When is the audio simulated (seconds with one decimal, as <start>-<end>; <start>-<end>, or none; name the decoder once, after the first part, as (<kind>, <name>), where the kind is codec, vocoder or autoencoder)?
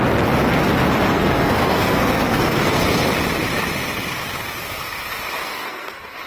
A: 1.1-2.8 (codec, SNAC); 5.4-6.3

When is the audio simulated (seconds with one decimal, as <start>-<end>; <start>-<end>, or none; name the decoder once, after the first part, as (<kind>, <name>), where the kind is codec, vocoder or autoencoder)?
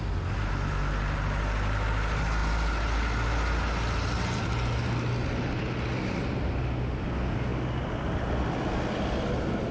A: none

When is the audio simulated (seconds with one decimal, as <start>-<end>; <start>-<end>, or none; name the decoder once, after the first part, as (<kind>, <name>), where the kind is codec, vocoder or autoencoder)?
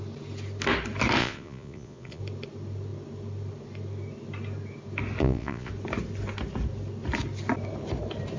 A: 1.2-2.2 (vocoder, Vocos); 5.2-5.7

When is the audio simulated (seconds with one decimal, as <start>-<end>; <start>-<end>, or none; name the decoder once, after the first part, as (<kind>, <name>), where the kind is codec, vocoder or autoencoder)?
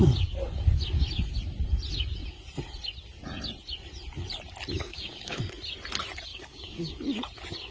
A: 4.9-5.4 (codec, DAC); 6.3-6.9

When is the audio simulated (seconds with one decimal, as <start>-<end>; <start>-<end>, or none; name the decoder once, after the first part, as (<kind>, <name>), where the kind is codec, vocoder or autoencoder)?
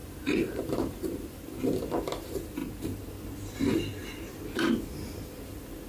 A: 0.0-1.6 (vocoder, BigVGAN v2)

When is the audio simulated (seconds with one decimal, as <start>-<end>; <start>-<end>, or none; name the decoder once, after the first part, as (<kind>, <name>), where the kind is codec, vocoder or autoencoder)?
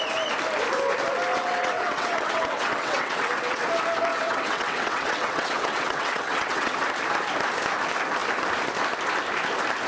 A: 1.3-3.6 (vocoder, WaveNeXt); 4.1-6.8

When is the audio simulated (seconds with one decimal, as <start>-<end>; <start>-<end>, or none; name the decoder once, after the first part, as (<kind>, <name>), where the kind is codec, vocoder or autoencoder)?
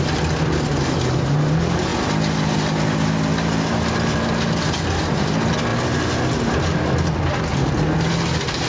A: none